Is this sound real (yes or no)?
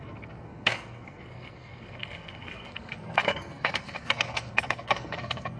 no